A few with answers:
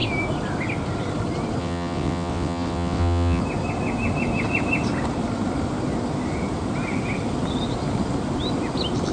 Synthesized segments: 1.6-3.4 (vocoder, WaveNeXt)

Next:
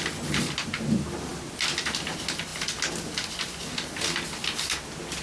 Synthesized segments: none

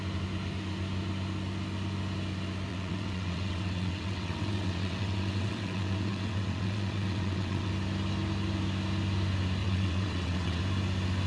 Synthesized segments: 2.7-7.7 (vocoder, WaveNeXt); 9.6-10.6